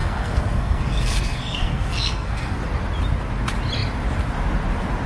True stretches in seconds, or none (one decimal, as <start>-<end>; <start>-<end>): 2.6-5.1

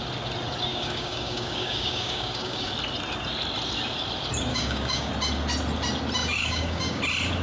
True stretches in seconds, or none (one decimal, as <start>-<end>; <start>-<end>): 0.0-0.7; 2.7-4.5; 5.1-6.2; 7.0-7.4

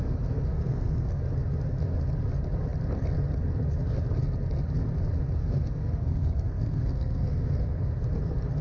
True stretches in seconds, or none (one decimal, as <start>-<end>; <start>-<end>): 0.0-0.5; 1.2-5.4; 8.0-8.6

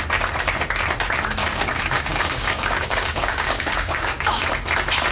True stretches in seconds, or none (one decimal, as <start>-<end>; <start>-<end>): 0.0-1.4; 4.5-5.1

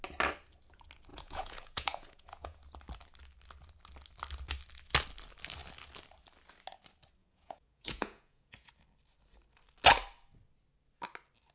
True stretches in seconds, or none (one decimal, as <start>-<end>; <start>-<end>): 0.0-1.1; 2.6-7.2; 8.7-11.5

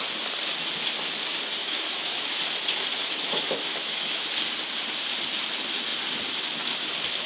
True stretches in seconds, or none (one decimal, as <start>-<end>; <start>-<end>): 0.0-1.6; 2.4-3.0; 4.3-7.3

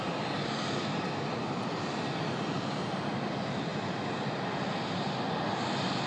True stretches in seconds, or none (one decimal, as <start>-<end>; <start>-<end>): 0.0-6.1

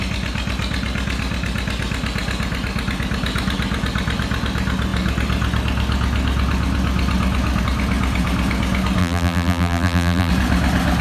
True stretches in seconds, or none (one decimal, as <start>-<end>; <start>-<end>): 0.0-9.0; 10.3-11.0